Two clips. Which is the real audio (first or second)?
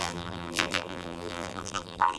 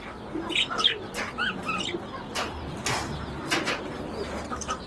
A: second